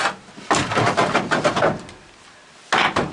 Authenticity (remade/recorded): recorded